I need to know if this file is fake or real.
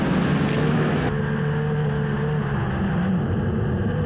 real